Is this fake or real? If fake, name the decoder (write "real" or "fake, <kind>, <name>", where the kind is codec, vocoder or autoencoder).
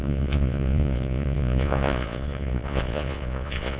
fake, vocoder, Vocos